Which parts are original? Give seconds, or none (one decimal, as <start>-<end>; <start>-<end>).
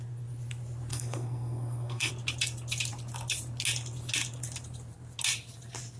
0.0-0.9; 2.1-6.0